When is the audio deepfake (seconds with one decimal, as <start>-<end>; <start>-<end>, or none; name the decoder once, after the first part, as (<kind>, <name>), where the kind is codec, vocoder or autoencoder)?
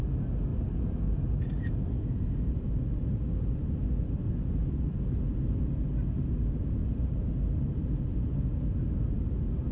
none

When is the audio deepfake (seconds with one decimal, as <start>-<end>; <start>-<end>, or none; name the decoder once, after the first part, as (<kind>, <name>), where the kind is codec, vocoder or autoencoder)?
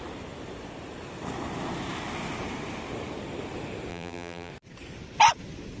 3.9-4.5 (vocoder, BigVGAN v2)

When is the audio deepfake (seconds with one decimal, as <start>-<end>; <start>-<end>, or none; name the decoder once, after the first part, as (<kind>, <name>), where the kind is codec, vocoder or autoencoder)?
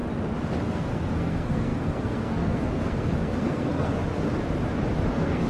0.6-4.0 (codec, SNAC); 5.1-5.5